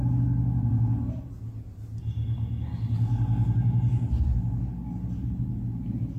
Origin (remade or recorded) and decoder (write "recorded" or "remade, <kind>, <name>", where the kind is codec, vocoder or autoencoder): recorded